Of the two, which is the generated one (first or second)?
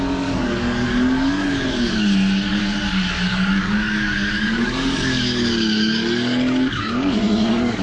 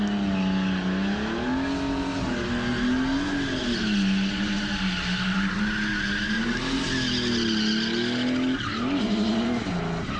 first